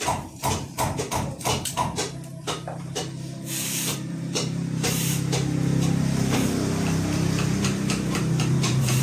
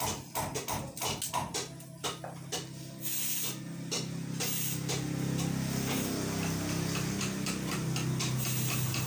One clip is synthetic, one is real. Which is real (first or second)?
second